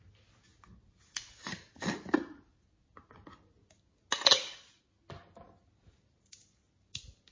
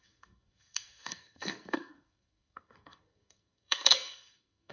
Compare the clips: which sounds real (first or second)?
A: first